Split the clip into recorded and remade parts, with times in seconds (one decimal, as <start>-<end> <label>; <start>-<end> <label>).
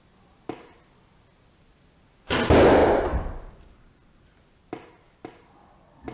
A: 0.0-6.1 recorded